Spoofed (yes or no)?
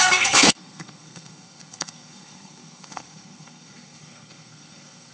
yes